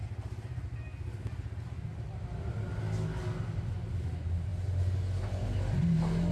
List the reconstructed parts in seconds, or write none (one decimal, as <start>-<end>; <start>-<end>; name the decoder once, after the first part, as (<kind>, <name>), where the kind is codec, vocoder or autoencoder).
none